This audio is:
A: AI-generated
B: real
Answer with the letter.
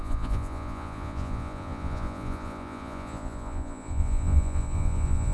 A